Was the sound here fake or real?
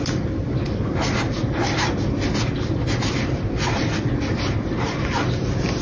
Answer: real